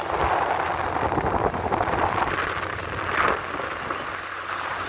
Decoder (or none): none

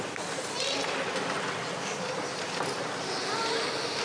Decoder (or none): none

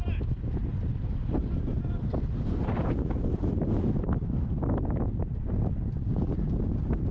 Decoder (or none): none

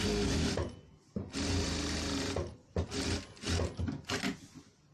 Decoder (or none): none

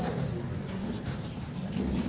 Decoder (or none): none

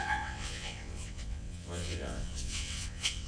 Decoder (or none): vocoder, WaveNeXt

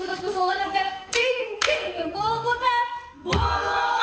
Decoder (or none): codec, SNAC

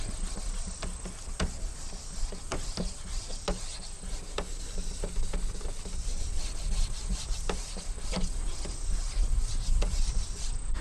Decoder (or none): none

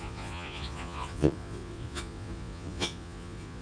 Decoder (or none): vocoder, Vocos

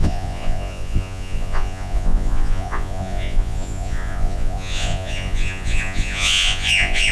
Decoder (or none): vocoder, Vocos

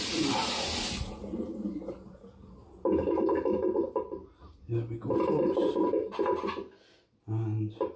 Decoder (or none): none